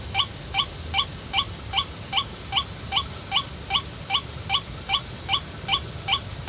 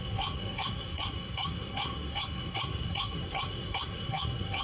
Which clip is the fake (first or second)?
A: second